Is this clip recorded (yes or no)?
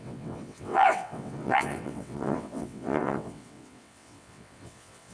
no